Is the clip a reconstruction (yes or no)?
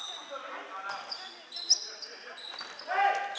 no